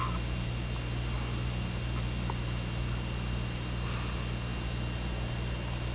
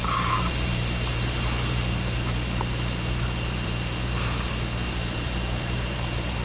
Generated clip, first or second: second